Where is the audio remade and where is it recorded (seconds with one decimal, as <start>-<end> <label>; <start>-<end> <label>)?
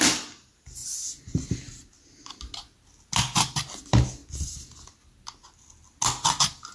0.0-4.2 recorded; 4.2-4.9 remade; 4.9-6.7 recorded